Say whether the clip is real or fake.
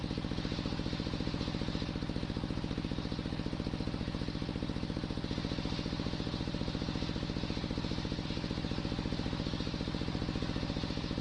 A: real